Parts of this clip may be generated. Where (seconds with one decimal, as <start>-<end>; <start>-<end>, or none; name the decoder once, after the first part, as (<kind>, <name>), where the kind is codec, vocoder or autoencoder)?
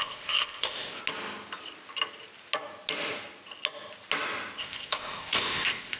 0.0-1.0 (codec, ZipCodec); 4.6-6.0